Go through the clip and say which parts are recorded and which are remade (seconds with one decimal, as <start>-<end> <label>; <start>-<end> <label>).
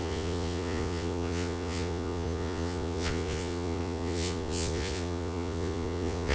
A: 0.0-6.3 remade